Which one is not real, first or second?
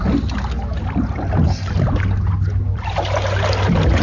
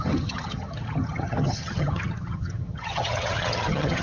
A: second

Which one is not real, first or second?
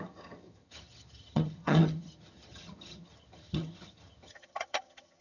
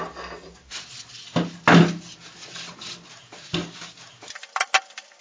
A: first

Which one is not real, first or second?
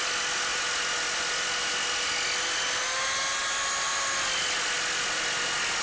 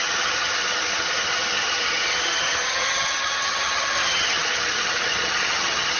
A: second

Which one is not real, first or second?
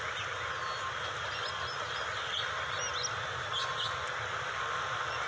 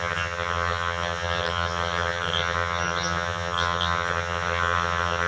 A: second